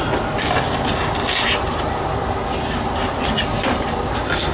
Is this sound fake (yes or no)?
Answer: yes